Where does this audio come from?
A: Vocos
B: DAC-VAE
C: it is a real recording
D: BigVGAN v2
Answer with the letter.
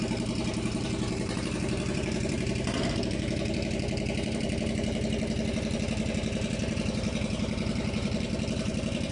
D